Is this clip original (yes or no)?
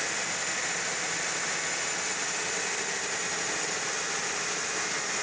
yes